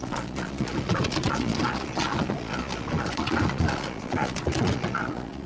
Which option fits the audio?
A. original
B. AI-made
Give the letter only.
B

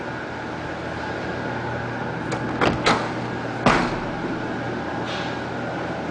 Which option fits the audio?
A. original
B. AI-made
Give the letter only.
A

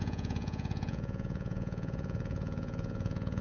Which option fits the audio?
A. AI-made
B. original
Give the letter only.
A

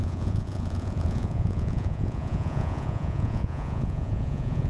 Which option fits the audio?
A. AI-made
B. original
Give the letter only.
A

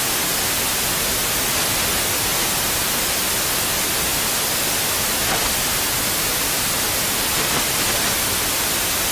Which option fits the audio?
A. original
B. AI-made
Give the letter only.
A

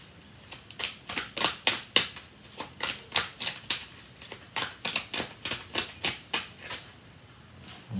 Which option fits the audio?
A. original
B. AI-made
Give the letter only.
A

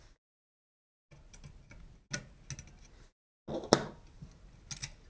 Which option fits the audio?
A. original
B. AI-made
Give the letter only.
A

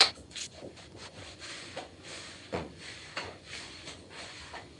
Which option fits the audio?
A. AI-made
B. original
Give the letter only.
A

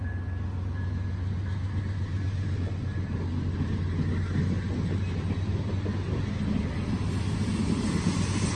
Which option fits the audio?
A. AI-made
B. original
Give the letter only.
B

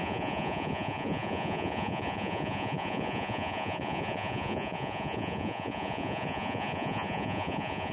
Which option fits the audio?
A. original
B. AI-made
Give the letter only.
B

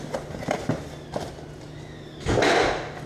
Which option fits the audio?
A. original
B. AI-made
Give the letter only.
A